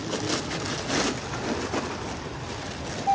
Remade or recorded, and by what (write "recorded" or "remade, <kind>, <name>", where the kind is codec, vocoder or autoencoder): recorded